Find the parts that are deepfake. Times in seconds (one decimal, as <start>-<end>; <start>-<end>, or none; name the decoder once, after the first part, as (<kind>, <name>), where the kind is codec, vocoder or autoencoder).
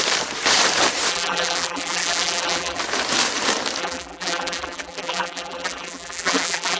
1.1-2.8 (vocoder, BigVGAN v2); 3.8-6.8